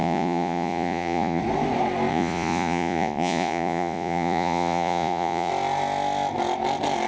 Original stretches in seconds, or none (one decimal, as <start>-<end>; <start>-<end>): 1.4-2.1; 5.5-7.1